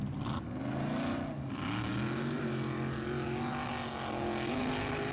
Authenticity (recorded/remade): recorded